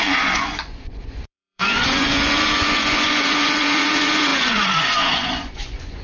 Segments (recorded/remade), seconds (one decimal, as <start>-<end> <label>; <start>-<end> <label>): 0.0-6.0 remade

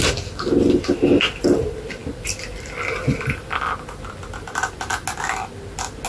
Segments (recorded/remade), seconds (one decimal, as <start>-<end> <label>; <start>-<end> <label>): 0.0-6.1 recorded